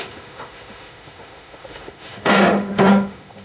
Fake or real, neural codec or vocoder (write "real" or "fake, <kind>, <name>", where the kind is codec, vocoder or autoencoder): fake, autoencoder, DAC-VAE